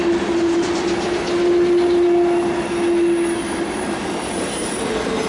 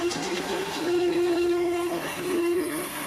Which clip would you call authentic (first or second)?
first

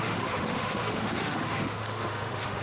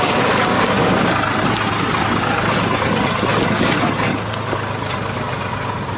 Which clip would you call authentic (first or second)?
second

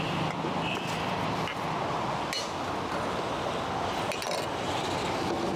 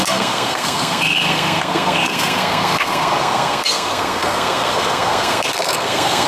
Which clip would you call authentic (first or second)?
first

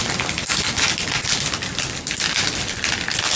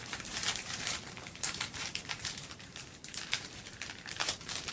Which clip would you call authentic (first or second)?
first